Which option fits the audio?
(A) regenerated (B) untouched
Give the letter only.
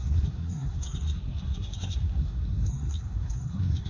A